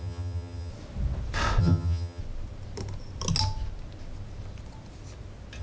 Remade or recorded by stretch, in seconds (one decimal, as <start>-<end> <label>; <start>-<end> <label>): 0.0-0.7 remade; 0.7-1.6 recorded; 1.6-2.2 remade; 2.2-5.6 recorded